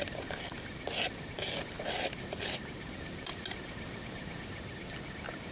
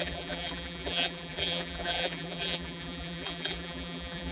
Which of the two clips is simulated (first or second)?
second